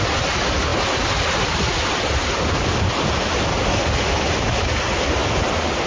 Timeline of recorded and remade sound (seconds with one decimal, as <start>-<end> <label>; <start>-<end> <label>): 0.0-5.9 recorded